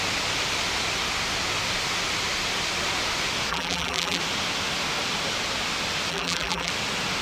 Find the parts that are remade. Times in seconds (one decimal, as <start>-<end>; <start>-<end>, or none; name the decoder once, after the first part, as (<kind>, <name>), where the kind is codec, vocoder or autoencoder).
3.5-4.2 (vocoder, BigVGAN v2); 6.1-6.7